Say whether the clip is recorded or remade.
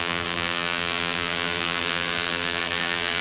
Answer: remade